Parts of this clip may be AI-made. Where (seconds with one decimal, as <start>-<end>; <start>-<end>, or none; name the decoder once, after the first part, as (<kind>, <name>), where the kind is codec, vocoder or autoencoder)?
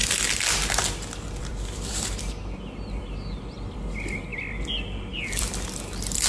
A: 1.4-6.3 (vocoder, BigVGAN v2)